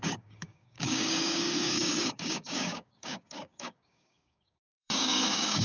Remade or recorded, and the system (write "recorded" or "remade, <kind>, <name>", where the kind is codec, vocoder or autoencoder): remade, codec, DAC